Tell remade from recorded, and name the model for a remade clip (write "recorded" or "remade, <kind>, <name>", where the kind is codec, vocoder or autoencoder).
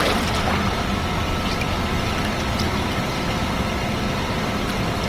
recorded